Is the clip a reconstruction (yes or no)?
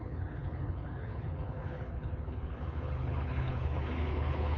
yes